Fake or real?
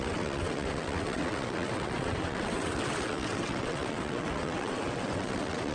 fake